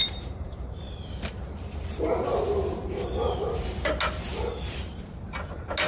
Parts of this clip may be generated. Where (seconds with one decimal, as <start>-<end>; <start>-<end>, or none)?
0.0-3.5; 4.3-5.2